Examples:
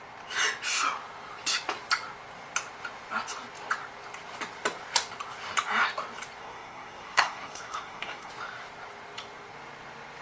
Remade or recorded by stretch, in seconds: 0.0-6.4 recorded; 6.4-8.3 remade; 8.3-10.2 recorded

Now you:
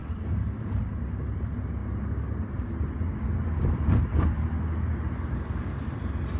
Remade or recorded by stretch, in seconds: 0.0-0.7 remade; 0.7-6.4 recorded

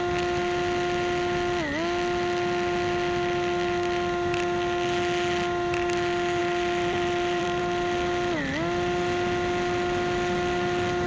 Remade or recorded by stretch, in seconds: 0.0-6.4 recorded; 6.4-7.6 remade; 7.6-11.1 recorded

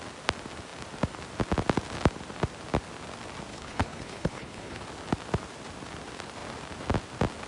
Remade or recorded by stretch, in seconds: 0.0-3.5 recorded; 3.5-4.8 remade; 4.8-7.5 recorded

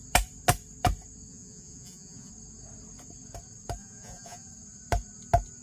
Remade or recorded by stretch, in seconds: 0.0-1.3 recorded; 1.3-2.3 remade; 2.3-3.8 recorded; 3.8-4.5 remade; 4.5-5.6 recorded

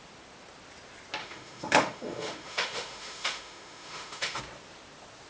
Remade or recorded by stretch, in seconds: 0.0-1.2 recorded; 1.2-4.4 remade; 4.4-5.3 recorded

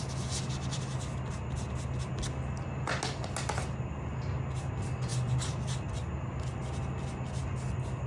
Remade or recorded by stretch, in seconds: 0.0-8.1 recorded